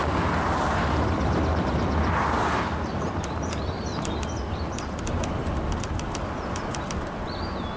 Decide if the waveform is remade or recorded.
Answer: recorded